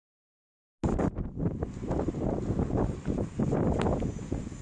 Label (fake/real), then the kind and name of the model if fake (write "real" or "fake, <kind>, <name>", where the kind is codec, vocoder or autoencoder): real